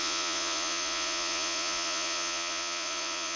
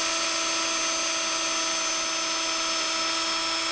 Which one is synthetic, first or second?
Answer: first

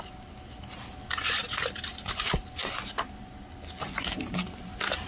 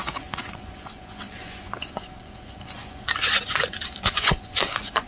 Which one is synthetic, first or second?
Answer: second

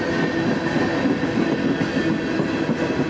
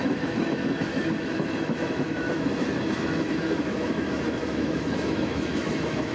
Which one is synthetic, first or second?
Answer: second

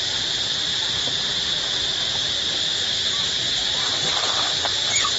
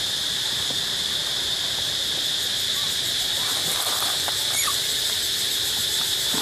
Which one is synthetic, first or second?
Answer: second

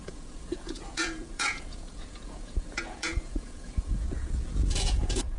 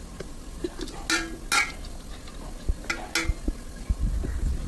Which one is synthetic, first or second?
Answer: first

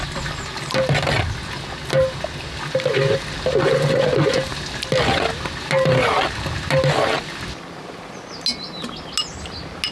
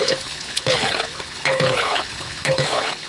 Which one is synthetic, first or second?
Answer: second